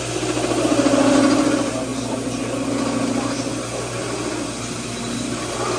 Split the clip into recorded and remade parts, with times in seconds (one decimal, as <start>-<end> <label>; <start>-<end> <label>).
0.0-5.8 recorded